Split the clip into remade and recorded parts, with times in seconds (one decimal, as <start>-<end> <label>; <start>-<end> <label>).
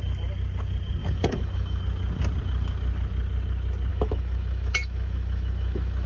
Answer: 0.0-1.0 recorded; 1.0-1.8 remade; 1.8-3.9 recorded; 3.9-6.1 remade